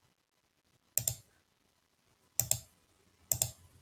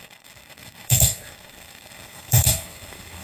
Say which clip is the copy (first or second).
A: second